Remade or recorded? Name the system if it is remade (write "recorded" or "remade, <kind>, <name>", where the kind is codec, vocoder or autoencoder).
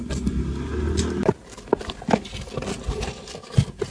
recorded